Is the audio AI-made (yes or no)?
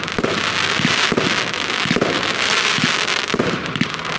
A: no